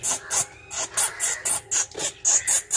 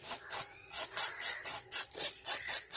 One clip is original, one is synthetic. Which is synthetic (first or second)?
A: second